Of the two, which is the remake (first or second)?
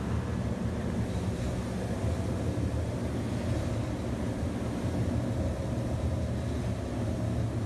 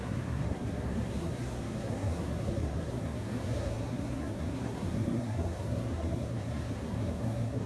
second